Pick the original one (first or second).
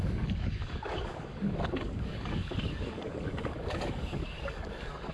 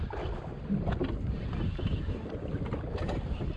second